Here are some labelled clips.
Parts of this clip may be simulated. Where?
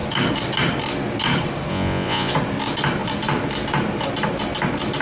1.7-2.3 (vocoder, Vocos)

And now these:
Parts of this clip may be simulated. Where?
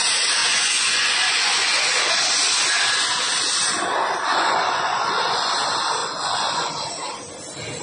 0.4-2.1 (vocoder, Vocos); 4.3-5.5; 6.0-6.7